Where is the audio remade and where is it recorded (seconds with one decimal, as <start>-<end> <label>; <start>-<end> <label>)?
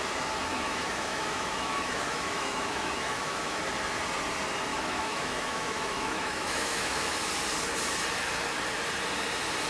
0.0-0.5 recorded; 0.5-3.6 remade; 3.6-4.7 recorded; 4.7-7.3 remade; 7.3-9.7 recorded